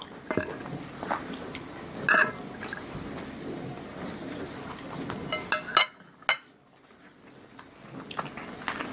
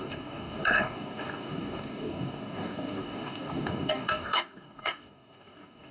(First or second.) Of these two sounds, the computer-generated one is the second